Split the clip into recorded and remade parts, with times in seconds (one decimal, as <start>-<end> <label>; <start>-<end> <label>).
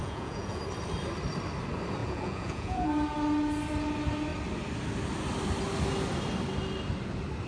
0.0-0.6 remade; 0.6-2.0 recorded; 2.0-2.9 remade; 2.9-7.5 recorded